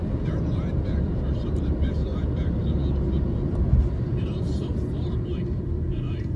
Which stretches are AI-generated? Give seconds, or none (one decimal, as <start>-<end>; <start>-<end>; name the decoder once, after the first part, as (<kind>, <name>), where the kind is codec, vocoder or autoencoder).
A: 0.7-2.1 (vocoder, BigVGAN v2); 5.9-6.4